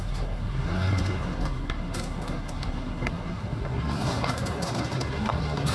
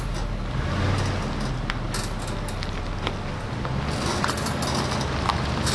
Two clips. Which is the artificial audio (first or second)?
first